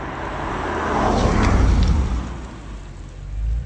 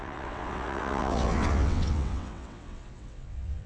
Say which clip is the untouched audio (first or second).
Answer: first